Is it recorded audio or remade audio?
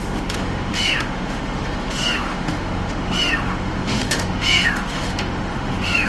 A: remade